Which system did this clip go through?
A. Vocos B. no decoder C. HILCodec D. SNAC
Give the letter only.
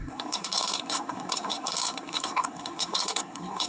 D